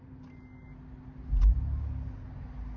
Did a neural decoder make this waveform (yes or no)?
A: no